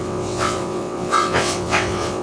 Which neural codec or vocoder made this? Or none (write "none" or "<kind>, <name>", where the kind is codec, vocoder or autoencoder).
vocoder, WaveNeXt